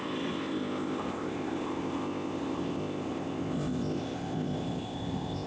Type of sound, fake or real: fake